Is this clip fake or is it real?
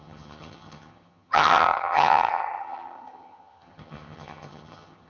fake